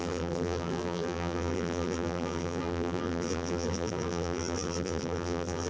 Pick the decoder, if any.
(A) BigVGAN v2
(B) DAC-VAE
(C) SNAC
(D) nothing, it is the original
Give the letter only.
A